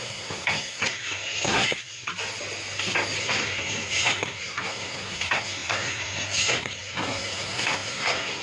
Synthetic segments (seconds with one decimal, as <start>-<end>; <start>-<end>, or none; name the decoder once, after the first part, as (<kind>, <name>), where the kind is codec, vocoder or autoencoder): 0.0-2.1 (codec, SNAC); 3.2-8.4